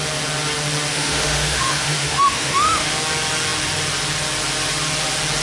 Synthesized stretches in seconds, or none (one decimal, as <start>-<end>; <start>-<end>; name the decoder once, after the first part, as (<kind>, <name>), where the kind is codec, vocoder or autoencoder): 0.9-2.9 (autoencoder, DAC-VAE)